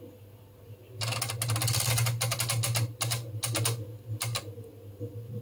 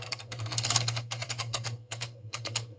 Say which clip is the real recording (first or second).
first